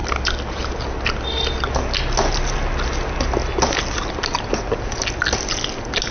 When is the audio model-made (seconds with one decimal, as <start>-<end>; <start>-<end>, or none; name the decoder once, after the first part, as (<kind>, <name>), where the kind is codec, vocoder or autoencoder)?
none